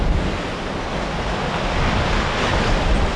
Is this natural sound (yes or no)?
yes